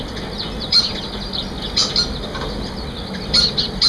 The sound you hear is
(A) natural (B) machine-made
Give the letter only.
A